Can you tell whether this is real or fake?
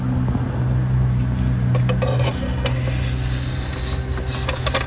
real